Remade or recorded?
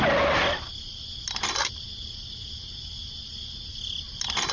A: recorded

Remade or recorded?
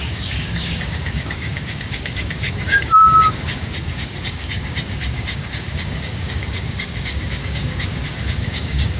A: remade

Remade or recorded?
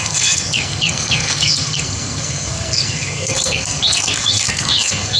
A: remade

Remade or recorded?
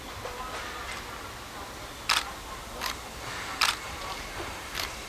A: recorded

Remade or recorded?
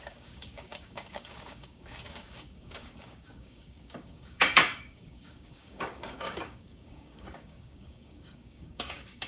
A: remade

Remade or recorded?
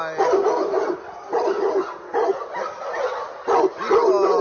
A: recorded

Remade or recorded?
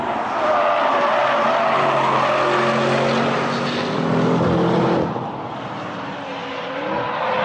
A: recorded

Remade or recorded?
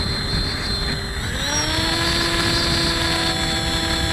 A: recorded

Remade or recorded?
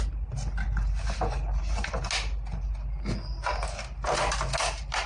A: recorded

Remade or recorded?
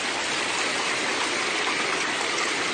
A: recorded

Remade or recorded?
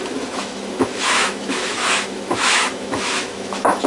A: remade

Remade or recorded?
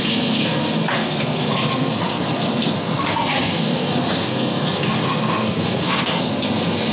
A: remade